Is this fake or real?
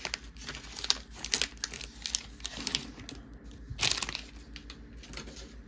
real